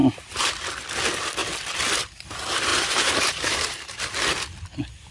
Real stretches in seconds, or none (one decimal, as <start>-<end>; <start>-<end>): 0.7-2.7; 4.0-5.1